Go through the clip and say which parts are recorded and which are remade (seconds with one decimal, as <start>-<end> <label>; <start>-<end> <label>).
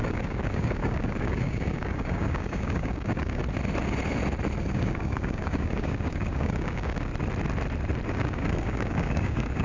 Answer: 0.0-3.4 remade; 3.4-4.7 recorded; 4.7-7.1 remade; 7.1-8.1 recorded; 8.1-9.6 remade